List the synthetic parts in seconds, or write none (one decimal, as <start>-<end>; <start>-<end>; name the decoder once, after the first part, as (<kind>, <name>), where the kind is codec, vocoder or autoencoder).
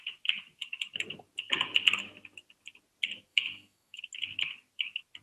3.3-4.0 (autoencoder, DAC-VAE)